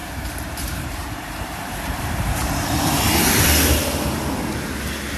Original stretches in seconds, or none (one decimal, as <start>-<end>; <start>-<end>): 3.0-5.2